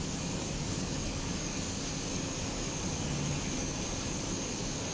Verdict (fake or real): fake